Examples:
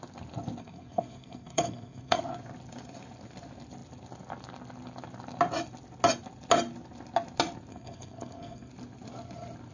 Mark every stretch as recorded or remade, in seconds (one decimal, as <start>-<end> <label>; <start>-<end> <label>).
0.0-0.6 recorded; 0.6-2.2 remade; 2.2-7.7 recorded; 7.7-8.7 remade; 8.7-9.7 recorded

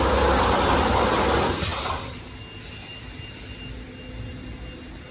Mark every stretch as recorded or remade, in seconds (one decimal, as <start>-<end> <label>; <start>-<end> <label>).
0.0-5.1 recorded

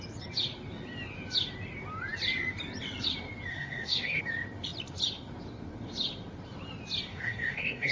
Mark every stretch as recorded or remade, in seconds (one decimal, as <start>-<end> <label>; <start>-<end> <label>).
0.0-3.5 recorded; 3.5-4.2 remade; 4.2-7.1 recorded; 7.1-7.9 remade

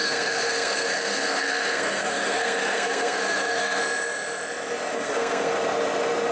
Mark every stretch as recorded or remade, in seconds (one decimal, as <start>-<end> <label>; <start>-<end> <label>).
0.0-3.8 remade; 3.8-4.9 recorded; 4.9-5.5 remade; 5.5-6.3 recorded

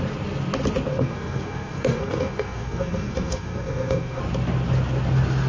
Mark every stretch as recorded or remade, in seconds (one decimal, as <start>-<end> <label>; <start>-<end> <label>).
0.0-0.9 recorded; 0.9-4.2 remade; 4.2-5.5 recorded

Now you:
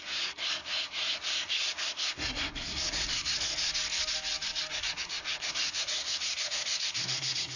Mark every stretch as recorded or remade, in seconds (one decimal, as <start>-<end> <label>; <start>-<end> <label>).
0.0-3.7 remade; 3.7-4.7 recorded; 4.7-7.6 remade

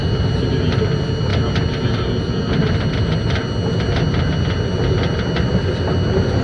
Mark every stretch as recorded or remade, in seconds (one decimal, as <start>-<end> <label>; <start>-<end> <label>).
0.0-6.4 recorded